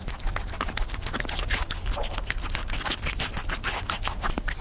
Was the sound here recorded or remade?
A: recorded